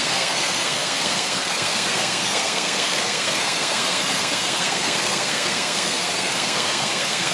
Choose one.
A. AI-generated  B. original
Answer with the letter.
A